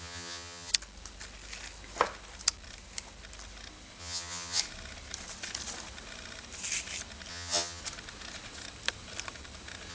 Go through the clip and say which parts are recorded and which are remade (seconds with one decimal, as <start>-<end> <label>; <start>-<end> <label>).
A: 0.0-0.7 remade; 0.7-4.0 recorded; 4.0-4.6 remade; 4.6-7.3 recorded; 7.3-7.8 remade; 7.8-9.9 recorded